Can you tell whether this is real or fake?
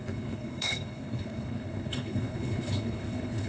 fake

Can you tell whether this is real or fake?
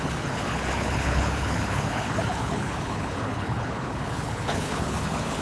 fake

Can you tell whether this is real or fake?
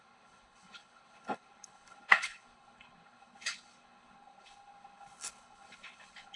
fake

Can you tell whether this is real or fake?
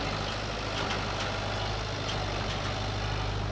real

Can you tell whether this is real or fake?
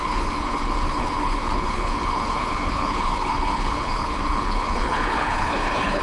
fake